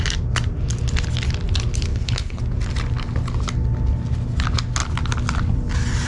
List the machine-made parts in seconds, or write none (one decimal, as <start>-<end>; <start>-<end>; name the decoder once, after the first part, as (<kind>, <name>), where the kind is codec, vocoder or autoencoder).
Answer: 1.9-2.4 (codec, HILCodec)